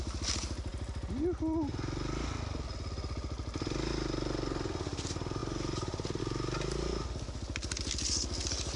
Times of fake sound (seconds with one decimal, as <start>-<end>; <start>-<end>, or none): 5.4-6.2